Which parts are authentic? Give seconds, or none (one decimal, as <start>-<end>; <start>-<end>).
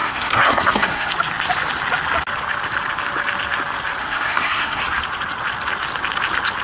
1.1-4.0; 4.8-6.6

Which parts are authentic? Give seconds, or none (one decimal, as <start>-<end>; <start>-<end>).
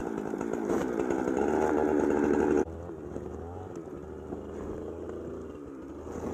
0.0-6.3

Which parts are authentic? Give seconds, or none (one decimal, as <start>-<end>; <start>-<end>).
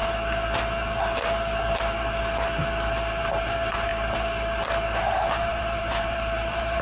0.0-3.4; 3.9-5.1